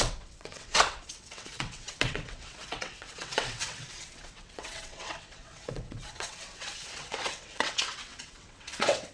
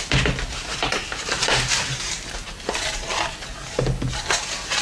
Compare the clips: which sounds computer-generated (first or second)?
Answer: first